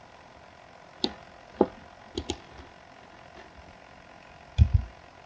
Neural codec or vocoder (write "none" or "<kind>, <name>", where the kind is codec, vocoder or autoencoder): none